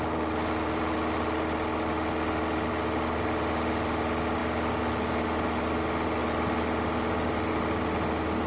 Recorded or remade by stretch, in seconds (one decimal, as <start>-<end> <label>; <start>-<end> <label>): 0.0-8.5 recorded